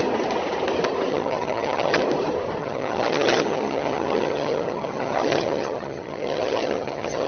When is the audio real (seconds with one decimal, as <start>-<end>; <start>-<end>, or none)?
0.0-1.1; 2.0-2.6